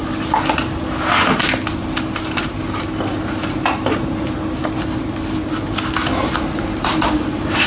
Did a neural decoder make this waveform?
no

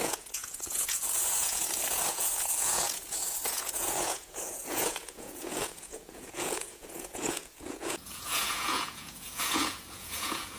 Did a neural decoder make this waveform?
yes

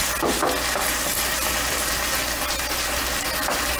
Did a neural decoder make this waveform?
no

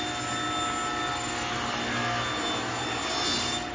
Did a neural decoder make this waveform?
no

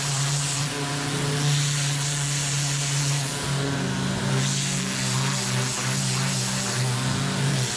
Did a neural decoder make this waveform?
no